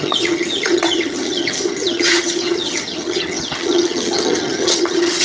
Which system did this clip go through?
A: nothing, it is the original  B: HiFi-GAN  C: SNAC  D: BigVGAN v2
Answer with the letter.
B